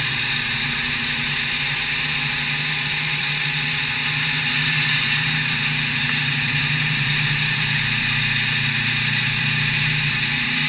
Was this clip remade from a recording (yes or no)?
yes